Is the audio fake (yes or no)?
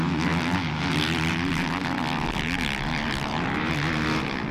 no